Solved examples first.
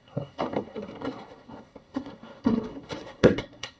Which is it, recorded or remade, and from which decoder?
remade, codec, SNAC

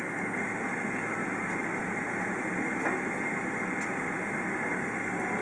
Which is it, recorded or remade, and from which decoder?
recorded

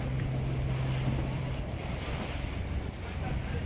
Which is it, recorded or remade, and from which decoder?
recorded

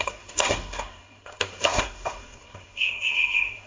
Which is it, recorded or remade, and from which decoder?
remade, codec, SNAC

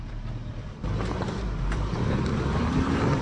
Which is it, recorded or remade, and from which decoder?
remade, vocoder, BigVGAN v2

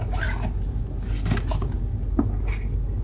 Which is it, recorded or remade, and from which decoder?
recorded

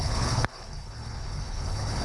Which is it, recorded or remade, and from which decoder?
remade, codec, HILCodec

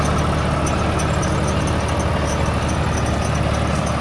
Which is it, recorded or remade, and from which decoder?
recorded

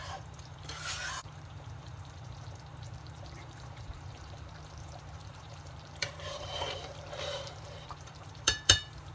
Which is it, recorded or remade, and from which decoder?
remade, vocoder, BigVGAN v2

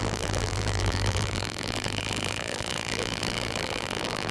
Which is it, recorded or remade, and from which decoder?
remade, vocoder, BigVGAN v2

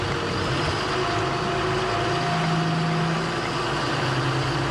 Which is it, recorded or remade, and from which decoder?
recorded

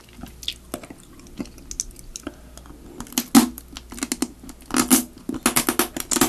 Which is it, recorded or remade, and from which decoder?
recorded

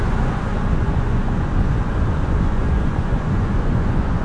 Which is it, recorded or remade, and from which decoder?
remade, vocoder, Vocos